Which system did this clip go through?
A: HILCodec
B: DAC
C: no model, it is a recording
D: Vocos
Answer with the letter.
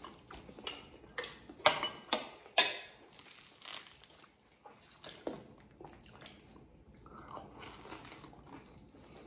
C